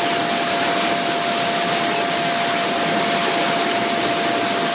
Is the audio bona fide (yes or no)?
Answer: yes